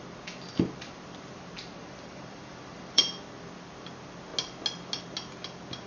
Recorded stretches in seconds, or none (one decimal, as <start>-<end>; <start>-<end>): 0.0-1.8; 3.2-5.9